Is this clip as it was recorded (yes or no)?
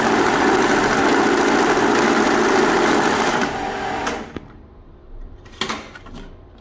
yes